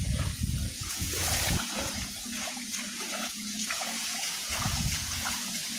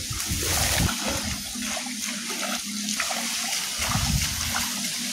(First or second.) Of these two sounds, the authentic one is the second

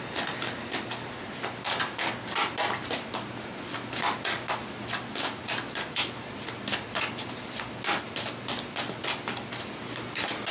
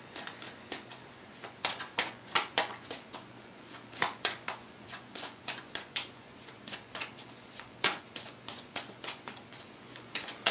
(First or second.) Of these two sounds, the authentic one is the first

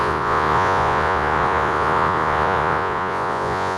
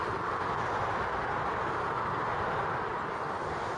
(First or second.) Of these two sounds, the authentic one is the second